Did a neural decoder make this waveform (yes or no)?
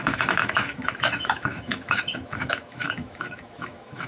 yes